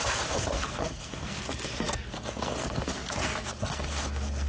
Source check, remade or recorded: remade